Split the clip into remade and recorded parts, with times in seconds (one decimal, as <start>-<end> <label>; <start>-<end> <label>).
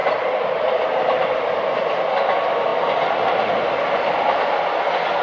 0.0-5.2 recorded